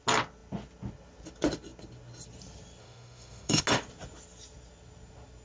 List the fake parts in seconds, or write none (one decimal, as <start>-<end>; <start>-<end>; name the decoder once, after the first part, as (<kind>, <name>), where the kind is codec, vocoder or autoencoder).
2.8-3.6 (autoencoder, DAC-VAE)

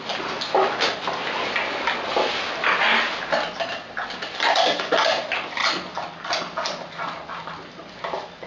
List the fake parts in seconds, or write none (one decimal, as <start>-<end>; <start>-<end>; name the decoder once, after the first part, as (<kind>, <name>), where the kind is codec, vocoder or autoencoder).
none

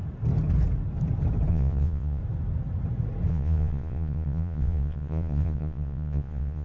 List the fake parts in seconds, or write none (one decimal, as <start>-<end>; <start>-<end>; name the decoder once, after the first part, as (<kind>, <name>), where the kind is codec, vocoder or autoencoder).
1.5-2.2 (vocoder, Vocos); 3.3-6.6